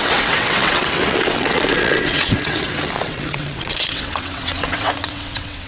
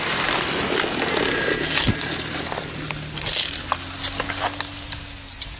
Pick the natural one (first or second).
second